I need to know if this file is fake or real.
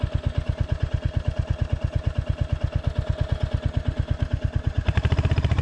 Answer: real